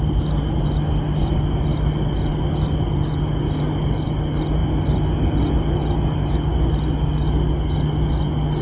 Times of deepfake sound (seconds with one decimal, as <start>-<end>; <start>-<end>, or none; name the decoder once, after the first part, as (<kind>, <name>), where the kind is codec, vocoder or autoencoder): none